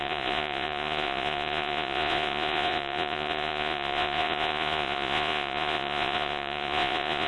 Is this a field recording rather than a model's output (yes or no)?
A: no